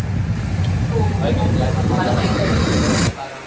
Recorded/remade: recorded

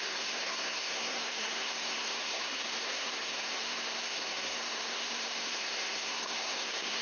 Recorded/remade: remade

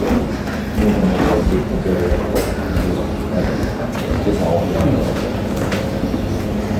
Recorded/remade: recorded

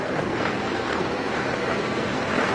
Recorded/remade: remade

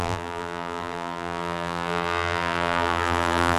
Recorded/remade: remade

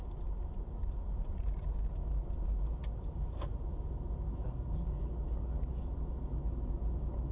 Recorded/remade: recorded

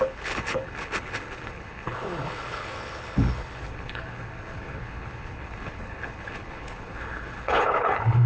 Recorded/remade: remade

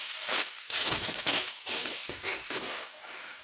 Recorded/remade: remade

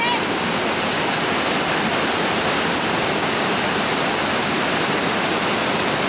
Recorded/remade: recorded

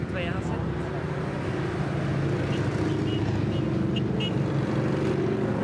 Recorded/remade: recorded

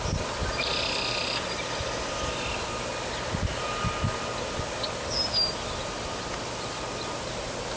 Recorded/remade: recorded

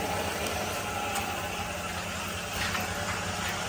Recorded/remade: recorded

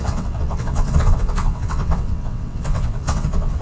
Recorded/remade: remade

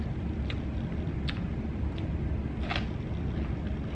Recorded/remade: recorded